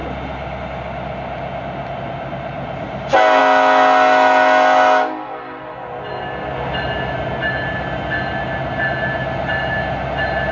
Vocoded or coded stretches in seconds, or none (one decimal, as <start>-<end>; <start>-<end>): none